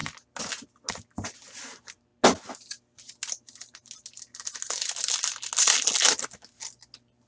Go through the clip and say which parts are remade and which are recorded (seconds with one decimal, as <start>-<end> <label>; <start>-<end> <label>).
0.0-7.3 recorded